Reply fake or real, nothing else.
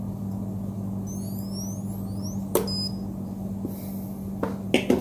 real